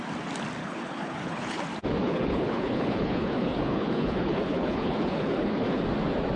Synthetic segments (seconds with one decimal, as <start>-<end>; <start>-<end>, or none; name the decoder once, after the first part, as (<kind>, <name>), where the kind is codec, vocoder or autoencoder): 0.6-1.6 (codec, HILCodec); 2.0-5.8